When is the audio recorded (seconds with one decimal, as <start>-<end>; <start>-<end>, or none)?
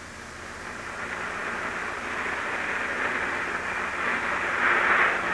0.0-5.3